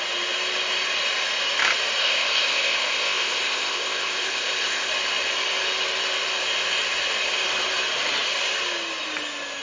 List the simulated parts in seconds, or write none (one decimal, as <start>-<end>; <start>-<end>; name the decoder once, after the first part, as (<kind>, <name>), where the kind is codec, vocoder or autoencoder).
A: 2.0-4.9 (codec, ZipCodec)